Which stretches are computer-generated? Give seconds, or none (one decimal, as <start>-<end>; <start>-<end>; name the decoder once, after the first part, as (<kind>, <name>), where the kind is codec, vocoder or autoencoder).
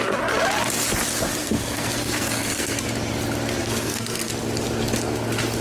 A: 1.4-2.8 (codec, SNAC); 3.6-4.3